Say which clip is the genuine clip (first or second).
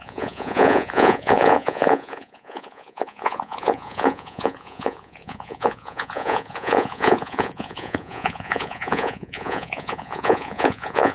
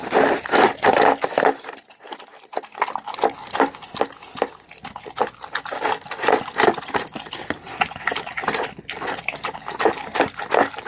second